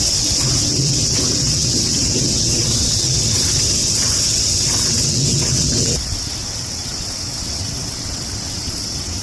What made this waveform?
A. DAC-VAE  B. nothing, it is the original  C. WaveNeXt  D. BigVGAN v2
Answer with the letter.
C